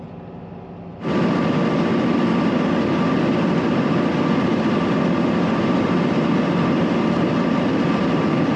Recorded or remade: recorded